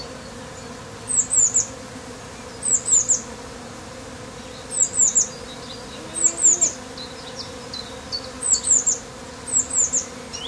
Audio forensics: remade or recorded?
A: recorded